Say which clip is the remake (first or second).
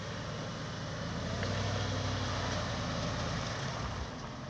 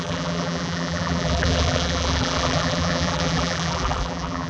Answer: second